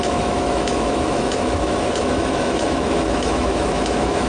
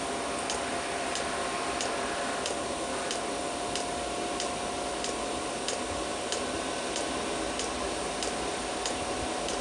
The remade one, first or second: first